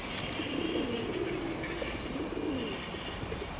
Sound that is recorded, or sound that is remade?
recorded